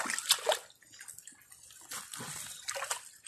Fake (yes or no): no